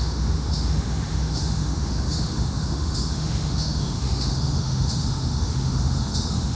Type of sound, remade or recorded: remade